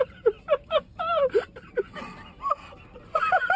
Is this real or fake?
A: real